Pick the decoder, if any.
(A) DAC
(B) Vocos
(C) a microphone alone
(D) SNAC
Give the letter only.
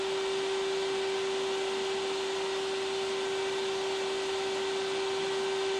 C